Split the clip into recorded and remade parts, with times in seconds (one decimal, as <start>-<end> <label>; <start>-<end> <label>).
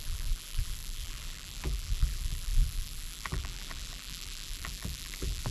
0.0-5.5 remade